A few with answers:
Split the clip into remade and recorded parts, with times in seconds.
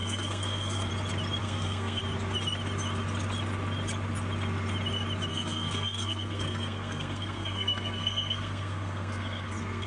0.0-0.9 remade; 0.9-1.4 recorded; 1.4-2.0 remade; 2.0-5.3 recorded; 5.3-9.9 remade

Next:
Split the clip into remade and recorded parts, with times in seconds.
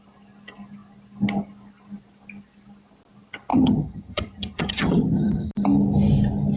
0.0-3.5 recorded; 3.5-5.5 remade; 5.5-6.6 recorded